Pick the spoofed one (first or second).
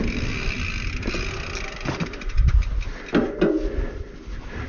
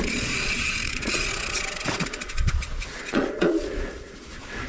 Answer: second